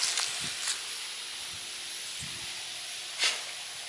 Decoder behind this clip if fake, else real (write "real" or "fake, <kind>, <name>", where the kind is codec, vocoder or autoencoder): real